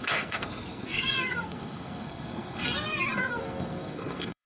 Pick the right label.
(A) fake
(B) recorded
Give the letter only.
A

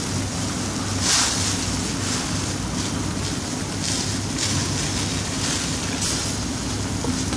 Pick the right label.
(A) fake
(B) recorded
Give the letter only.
B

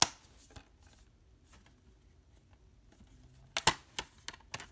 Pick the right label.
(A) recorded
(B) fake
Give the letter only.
A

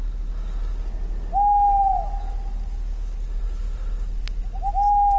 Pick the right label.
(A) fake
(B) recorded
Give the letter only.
B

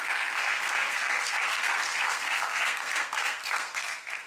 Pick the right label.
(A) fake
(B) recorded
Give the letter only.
A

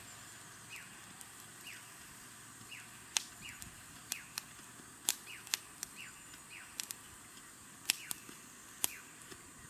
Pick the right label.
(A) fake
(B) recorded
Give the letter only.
B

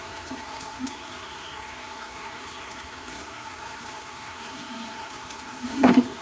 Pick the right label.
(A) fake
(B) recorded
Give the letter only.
A